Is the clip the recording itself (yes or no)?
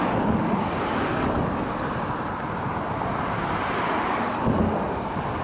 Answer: yes